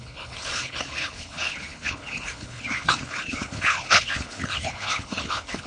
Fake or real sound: fake